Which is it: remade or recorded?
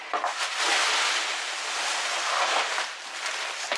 recorded